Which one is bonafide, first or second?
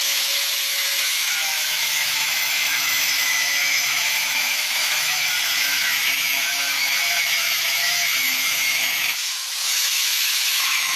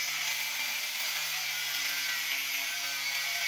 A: second